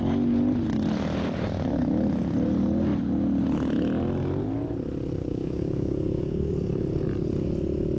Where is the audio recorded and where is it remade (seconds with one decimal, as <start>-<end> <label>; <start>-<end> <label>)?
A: 0.0-5.2 recorded; 5.2-6.5 remade; 6.5-8.0 recorded